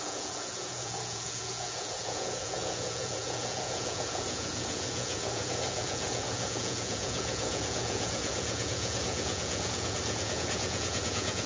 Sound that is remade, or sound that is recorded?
remade